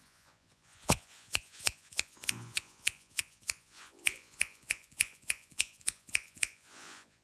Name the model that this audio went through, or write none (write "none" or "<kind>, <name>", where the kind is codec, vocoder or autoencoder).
vocoder, Vocos